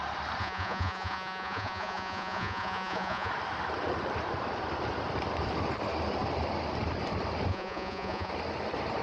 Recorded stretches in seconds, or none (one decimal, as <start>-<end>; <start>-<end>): 0.0-0.4; 3.3-7.5; 8.3-9.0